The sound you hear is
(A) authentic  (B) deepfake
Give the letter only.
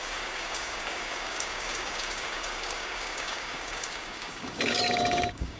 B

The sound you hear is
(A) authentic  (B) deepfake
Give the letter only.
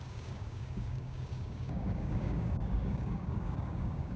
B